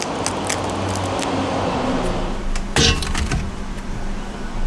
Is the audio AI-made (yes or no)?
no